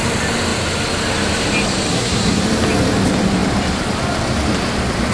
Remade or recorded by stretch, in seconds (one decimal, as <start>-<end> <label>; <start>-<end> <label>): 0.0-1.9 recorded; 1.9-2.4 remade; 2.4-5.1 recorded